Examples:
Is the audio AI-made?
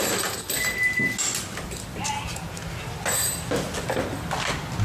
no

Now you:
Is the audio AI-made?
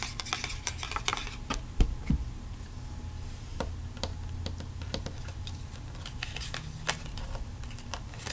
no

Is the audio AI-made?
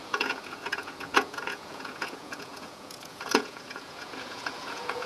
yes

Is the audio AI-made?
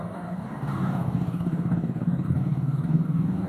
yes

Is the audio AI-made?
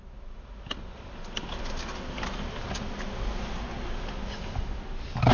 no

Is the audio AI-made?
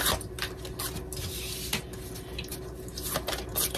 no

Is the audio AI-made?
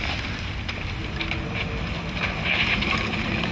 no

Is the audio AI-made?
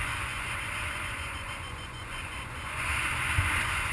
yes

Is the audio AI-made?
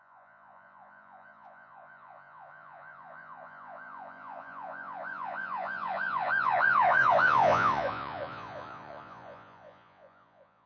yes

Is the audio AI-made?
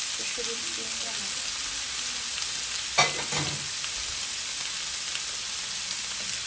no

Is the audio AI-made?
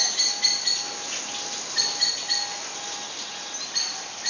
no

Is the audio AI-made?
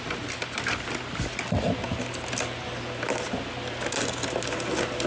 no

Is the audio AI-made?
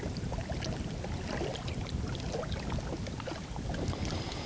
no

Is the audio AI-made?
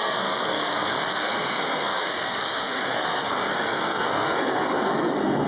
yes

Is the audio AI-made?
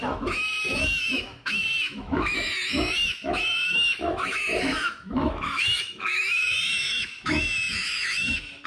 yes